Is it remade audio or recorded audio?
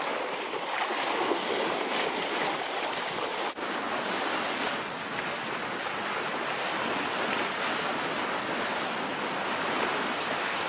recorded